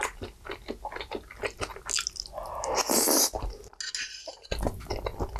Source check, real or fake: real